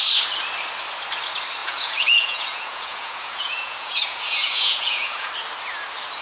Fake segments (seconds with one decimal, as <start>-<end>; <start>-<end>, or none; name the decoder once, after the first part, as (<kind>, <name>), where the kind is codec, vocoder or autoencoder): 1.6-5.3 (vocoder, Vocos)